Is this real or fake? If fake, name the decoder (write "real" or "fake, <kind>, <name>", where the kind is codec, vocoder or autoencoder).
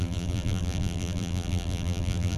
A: fake, vocoder, BigVGAN v2